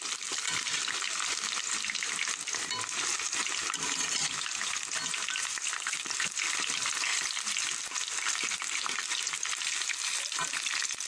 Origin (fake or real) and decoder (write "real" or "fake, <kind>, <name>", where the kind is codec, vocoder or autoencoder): real